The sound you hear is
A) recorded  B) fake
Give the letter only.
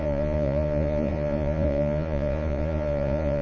B